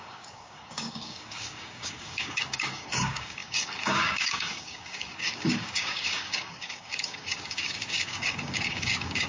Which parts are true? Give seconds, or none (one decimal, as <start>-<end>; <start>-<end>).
none